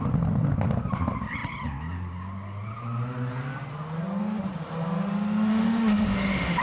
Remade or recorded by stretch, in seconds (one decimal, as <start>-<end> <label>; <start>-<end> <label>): 0.0-5.5 recorded; 5.5-6.6 remade